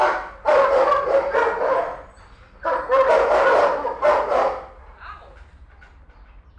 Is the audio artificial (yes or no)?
no